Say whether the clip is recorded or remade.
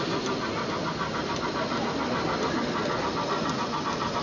recorded